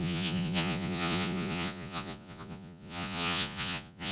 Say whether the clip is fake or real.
fake